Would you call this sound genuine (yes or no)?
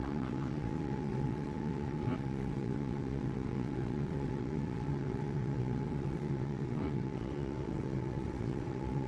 no